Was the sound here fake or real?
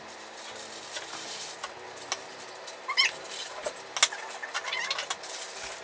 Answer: real